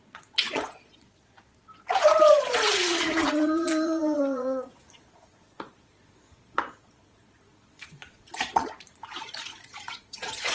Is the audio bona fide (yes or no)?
no